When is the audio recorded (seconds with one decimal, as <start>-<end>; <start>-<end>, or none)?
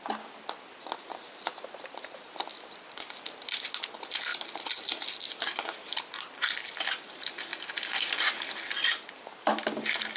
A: 0.0-10.2